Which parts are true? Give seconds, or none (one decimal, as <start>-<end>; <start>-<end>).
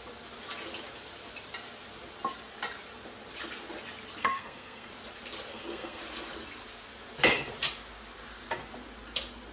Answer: 0.0-4.2; 4.9-5.5; 6.0-9.5